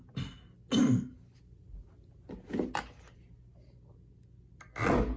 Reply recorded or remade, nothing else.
recorded